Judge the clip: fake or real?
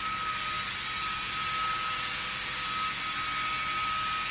real